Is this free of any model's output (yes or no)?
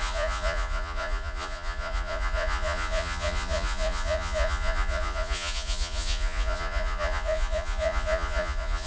no